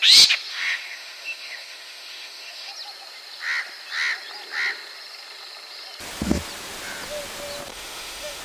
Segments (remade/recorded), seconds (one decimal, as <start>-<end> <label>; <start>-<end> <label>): 0.0-0.5 recorded; 0.5-2.7 remade; 2.7-7.7 recorded; 7.7-8.4 remade